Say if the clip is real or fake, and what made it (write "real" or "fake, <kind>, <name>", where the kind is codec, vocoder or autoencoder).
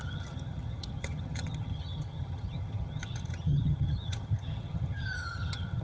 fake, vocoder, HiFi-GAN